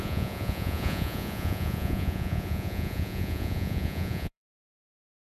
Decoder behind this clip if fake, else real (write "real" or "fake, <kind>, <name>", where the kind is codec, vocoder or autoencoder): fake, vocoder, Vocos